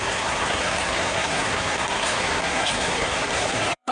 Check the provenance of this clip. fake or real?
fake